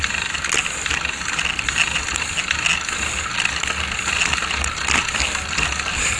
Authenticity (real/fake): real